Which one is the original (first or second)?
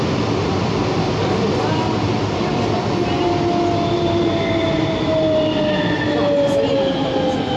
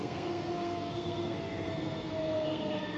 first